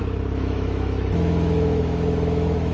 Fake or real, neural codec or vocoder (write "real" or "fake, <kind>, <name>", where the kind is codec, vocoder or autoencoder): fake, autoencoder, DAC-VAE